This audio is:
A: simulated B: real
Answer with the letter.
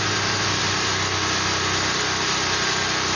B